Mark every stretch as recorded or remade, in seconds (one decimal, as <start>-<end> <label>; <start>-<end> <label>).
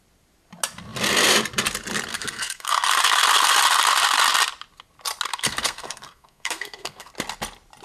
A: 0.0-2.1 recorded; 2.1-2.9 remade; 2.9-5.3 recorded; 5.3-7.1 remade; 7.1-7.8 recorded